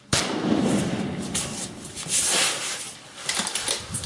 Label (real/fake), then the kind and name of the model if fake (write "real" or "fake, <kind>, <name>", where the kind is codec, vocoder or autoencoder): real